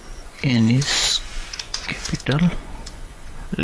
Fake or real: fake